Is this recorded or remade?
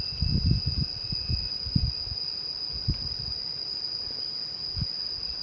recorded